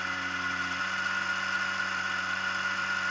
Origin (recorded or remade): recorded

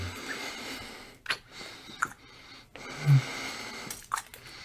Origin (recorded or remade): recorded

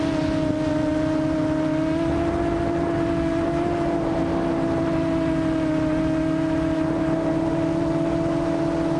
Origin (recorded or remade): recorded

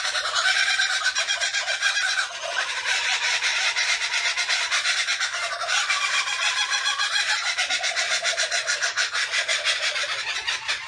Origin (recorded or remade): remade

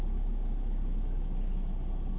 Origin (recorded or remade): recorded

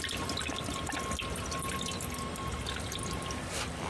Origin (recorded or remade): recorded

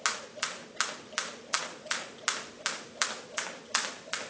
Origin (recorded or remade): recorded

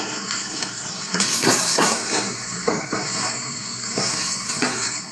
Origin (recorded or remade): remade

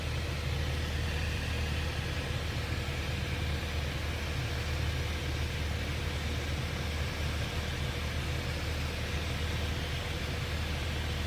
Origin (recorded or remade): recorded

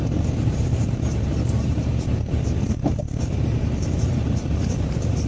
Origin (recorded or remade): remade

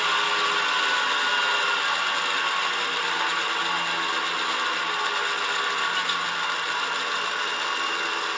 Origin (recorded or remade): recorded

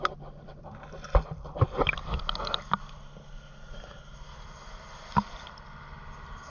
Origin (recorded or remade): recorded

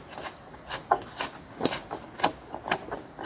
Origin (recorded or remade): recorded